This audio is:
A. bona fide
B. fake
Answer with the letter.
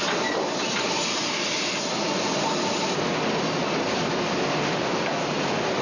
A